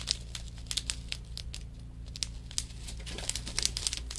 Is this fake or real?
real